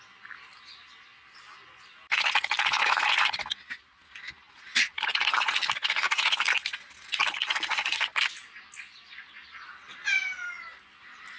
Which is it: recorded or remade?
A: recorded